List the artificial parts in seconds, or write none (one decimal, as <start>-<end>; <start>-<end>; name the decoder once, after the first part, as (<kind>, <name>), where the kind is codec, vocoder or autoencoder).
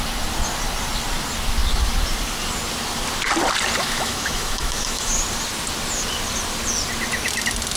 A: 3.8-5.1 (autoencoder, DAC-VAE)